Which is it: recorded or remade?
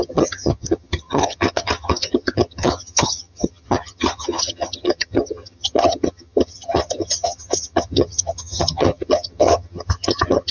remade